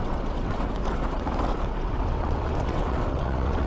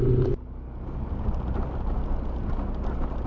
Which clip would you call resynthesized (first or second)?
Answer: first